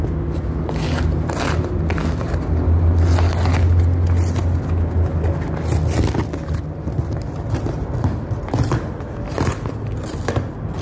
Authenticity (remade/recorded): recorded